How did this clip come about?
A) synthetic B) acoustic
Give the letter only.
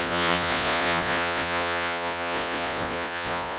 A